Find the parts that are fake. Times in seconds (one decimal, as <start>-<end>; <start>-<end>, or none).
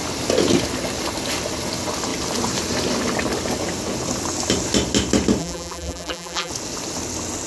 5.4-6.5